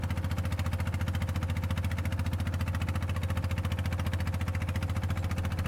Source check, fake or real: real